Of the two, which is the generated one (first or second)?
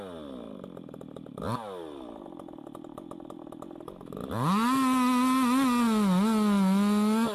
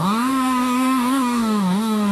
second